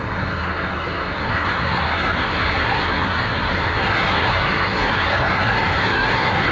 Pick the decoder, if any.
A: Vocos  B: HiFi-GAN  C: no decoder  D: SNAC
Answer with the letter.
D